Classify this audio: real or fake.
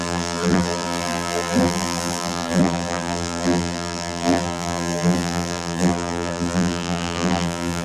fake